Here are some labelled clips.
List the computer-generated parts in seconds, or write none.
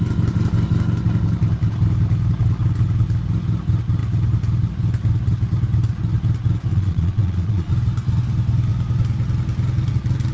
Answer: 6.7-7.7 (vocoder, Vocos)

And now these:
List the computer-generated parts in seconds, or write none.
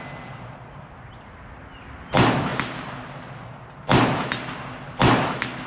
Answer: none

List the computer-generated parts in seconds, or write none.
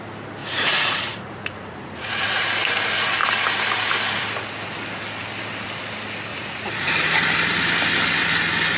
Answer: 0.4-2.4 (vocoder, Vocos); 6.3-7.2